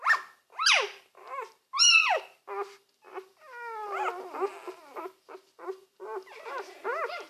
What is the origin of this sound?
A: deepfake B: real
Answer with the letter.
B